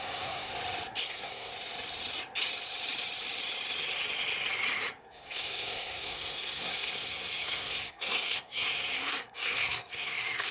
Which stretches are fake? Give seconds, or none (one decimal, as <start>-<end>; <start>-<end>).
0.0-0.5; 1.0-1.5; 5.0-10.5